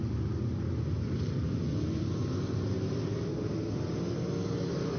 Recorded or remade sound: recorded